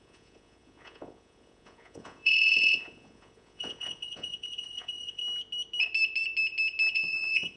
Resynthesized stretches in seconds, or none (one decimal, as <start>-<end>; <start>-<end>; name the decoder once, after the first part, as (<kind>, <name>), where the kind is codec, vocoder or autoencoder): 0.0-5.2 (vocoder, Vocos); 6.9-7.6